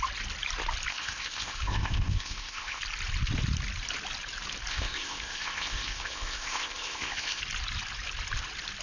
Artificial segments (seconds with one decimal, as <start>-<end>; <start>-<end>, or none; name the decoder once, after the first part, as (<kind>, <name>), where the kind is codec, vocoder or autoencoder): 0.9-2.8 (codec, ZipCodec); 4.7-7.4